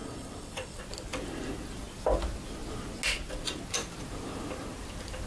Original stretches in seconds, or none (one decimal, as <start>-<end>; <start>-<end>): 0.8-5.3